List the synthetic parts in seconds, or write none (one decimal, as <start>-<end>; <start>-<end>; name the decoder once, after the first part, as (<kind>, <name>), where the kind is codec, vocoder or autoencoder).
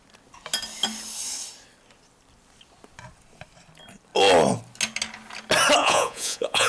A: 5.8-6.7 (vocoder, Vocos)